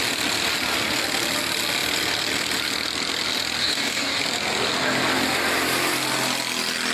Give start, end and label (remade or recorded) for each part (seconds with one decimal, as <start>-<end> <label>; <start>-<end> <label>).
0.0-3.6 recorded; 3.6-4.2 remade; 4.2-6.9 recorded